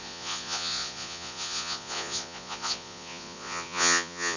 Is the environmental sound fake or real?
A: fake